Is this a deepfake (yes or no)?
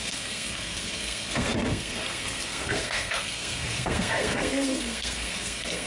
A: yes